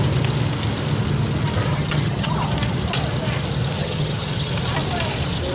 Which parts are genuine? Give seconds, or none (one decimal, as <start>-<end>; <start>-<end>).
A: 0.0-1.7; 2.5-3.8; 4.5-5.5